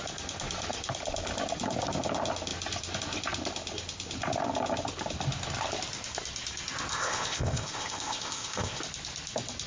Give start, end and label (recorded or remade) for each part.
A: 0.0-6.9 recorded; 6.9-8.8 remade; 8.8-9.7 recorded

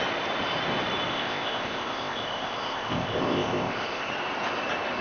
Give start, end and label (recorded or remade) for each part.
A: 0.0-1.1 recorded; 1.1-4.1 remade; 4.1-5.0 recorded

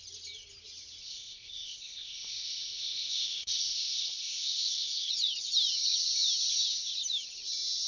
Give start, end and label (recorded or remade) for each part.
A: 0.0-1.0 recorded; 1.0-5.1 remade; 5.1-7.9 recorded